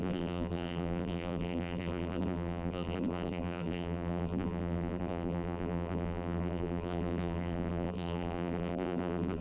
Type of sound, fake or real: fake